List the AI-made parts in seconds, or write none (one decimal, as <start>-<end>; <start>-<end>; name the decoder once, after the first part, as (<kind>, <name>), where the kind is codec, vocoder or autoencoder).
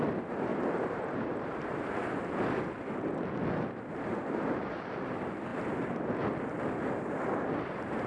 0.5-1.9 (vocoder, BigVGAN v2); 4.1-4.9